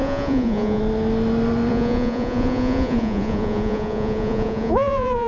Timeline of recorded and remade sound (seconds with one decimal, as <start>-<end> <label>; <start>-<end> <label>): 0.0-0.8 remade; 0.8-1.7 recorded; 1.7-5.3 remade